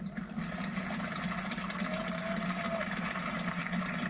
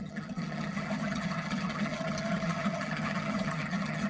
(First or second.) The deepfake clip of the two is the second